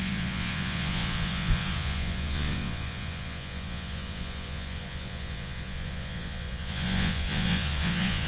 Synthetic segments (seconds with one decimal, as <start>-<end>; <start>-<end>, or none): 0.0-8.3

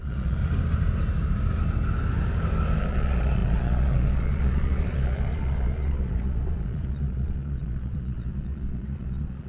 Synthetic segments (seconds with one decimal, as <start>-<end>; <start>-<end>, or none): 0.0-0.4; 2.8-9.5

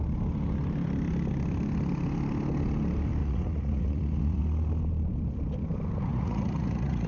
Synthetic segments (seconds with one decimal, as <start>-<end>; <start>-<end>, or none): 3.2-4.4; 6.1-7.1

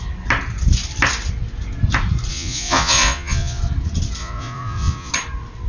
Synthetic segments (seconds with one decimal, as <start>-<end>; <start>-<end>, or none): 2.3-3.6; 4.2-5.1